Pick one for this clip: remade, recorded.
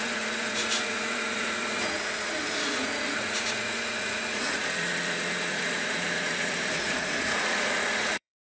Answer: remade